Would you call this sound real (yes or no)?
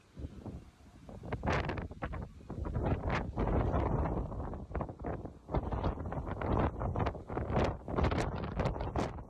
yes